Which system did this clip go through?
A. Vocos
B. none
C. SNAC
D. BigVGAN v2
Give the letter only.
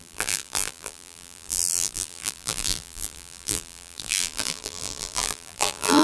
D